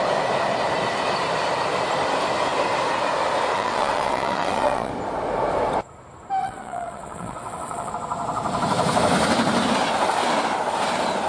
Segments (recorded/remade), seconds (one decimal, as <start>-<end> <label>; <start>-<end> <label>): 0.0-3.5 recorded; 3.5-4.9 remade; 4.9-6.4 recorded; 6.4-7.9 remade; 7.9-11.3 recorded